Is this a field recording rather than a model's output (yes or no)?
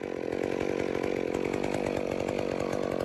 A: yes